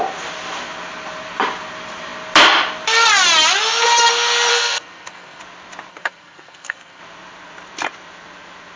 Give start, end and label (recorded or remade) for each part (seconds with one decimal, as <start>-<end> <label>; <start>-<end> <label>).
0.0-4.5 recorded; 4.5-5.4 remade; 5.4-5.9 recorded; 5.9-7.0 remade; 7.0-8.8 recorded